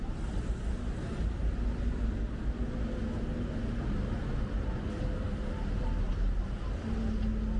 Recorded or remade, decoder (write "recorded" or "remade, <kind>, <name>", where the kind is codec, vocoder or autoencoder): recorded